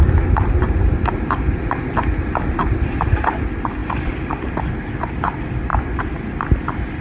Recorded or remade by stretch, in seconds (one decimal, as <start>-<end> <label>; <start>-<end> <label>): 0.0-7.0 recorded